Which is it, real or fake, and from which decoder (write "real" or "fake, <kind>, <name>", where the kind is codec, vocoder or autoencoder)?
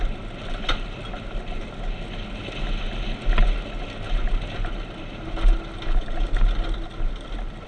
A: real